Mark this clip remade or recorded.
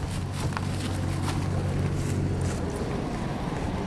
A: recorded